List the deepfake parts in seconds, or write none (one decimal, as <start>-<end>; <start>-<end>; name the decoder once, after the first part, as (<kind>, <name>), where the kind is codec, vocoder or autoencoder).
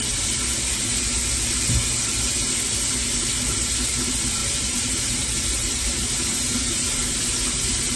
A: 4.4-8.0 (vocoder, BigVGAN v2)